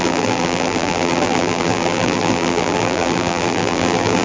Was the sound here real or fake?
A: fake